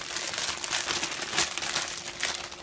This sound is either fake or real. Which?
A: real